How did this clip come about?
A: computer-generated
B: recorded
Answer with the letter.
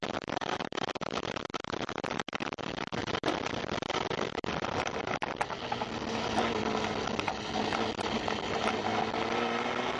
B